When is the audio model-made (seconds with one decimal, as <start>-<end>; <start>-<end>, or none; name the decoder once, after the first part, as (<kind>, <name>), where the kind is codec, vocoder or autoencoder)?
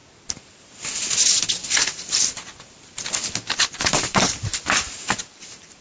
3.5-4.5 (vocoder, BigVGAN v2); 5.0-5.8